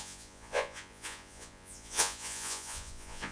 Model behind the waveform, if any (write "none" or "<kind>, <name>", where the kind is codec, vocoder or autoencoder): vocoder, Vocos